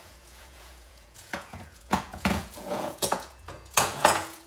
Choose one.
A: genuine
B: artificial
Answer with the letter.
B